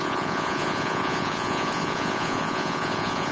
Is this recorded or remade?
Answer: remade